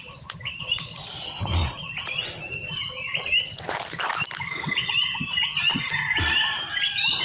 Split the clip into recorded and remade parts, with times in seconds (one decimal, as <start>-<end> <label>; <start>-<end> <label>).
0.0-2.6 recorded; 2.6-7.2 remade